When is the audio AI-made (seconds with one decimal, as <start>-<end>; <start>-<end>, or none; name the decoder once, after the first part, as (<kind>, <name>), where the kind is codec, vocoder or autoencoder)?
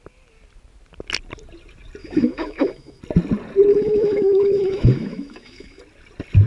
2.0-3.0 (autoencoder, DAC-VAE); 3.7-5.8